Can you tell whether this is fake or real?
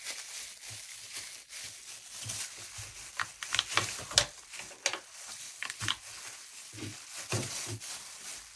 real